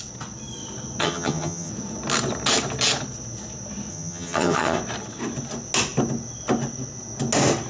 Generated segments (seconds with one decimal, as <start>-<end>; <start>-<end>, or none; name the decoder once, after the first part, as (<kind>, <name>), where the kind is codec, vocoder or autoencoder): 1.0-1.7 (vocoder, HiFi-GAN); 3.9-4.8